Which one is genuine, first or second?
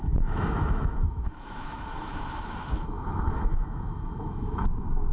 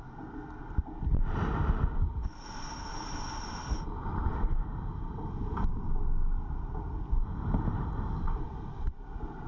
second